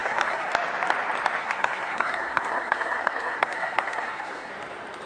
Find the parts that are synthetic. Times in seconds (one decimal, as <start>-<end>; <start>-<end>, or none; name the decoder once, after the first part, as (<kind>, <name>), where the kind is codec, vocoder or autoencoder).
0.0-0.5 (codec, SNAC); 1.4-4.5